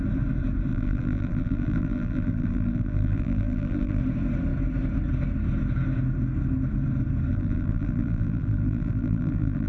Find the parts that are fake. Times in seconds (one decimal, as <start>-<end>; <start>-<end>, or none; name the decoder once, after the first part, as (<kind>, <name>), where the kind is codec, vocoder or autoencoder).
0.7-4.0 (vocoder, BigVGAN v2); 7.3-9.7